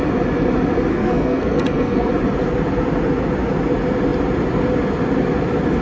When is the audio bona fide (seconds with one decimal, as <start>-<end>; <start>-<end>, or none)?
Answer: 0.0-0.9; 2.1-5.8